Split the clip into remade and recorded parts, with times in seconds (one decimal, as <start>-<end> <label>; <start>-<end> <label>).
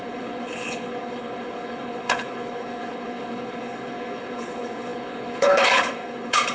0.0-6.5 remade